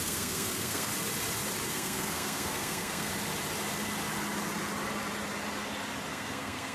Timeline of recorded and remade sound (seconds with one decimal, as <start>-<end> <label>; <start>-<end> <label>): 0.0-0.9 remade; 0.9-1.7 recorded; 1.7-3.1 remade; 3.1-6.1 recorded; 6.1-6.7 remade